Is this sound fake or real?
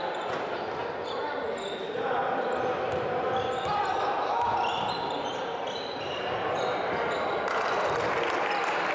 real